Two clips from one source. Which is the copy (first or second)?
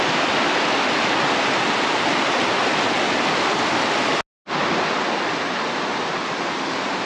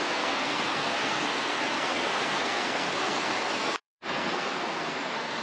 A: second